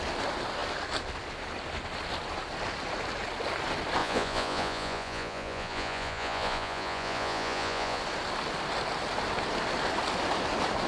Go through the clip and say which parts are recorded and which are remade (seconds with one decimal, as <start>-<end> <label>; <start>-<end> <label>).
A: 0.0-4.0 recorded; 4.0-8.0 remade; 8.0-10.9 recorded